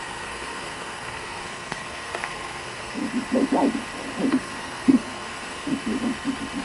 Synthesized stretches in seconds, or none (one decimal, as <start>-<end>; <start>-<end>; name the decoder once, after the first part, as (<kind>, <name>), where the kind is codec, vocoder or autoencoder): 0.0-3.0 (codec, SNAC); 4.3-5.7